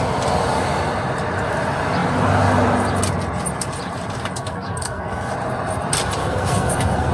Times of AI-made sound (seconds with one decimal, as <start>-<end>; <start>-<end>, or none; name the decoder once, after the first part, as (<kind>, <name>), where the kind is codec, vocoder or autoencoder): 4.4-5.3 (codec, SNAC); 6.2-7.1